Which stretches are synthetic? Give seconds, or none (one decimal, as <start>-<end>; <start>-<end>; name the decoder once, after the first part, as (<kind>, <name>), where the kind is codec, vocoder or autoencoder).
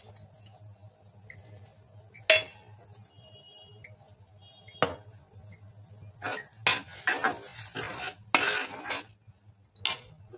none